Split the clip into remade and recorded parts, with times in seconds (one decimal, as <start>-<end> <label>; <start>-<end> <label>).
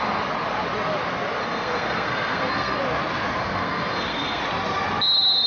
0.0-1.4 recorded; 1.4-2.8 remade; 2.8-3.4 recorded; 3.4-4.4 remade; 4.4-5.5 recorded